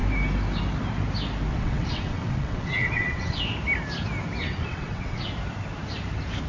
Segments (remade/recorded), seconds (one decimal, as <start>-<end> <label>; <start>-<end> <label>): 0.0-1.5 recorded; 1.5-3.4 remade; 3.4-4.4 recorded; 4.4-5.2 remade; 5.2-6.5 recorded